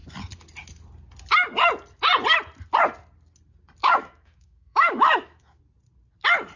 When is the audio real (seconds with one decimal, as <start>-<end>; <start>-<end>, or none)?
0.0-3.8; 5.6-6.6